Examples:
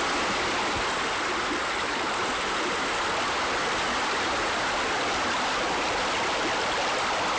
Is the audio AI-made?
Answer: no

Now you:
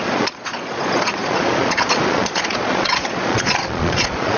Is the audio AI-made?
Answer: yes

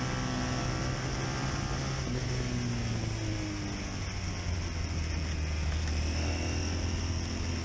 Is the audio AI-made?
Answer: no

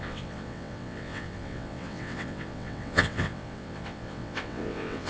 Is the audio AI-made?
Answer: yes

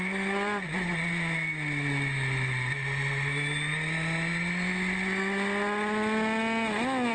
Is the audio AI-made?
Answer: no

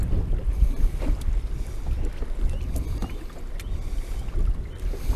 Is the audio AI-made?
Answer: no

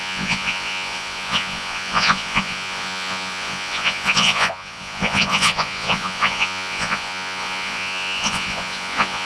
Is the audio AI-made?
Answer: yes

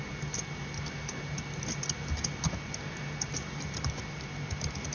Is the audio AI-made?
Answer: no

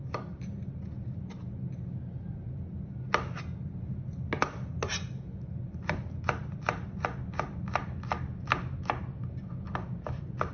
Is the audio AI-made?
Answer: no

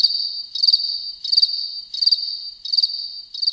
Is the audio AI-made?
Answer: no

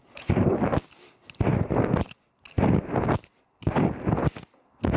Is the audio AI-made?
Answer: no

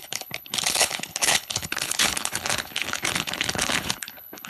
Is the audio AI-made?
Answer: yes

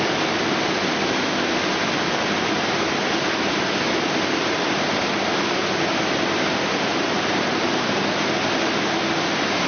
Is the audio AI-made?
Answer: no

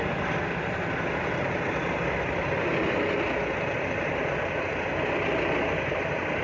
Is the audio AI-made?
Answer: no